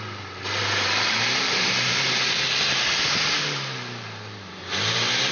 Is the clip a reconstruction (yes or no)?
yes